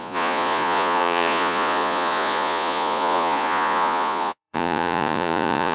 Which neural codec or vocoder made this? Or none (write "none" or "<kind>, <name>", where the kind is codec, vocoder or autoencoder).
vocoder, Vocos